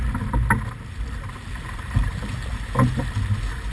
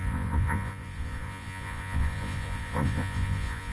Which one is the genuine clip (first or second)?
first